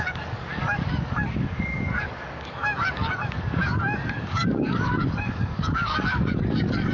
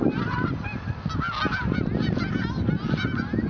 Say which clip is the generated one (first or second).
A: first